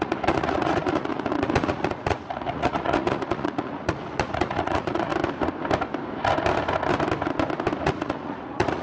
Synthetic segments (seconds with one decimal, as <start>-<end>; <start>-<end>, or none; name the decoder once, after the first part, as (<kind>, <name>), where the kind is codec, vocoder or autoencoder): 0.0-5.1 (vocoder, Vocos); 7.8-8.8